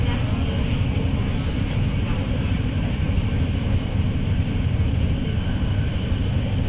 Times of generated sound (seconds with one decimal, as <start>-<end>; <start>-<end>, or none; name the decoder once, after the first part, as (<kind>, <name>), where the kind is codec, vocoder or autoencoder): 1.5-5.5 (vocoder, BigVGAN v2)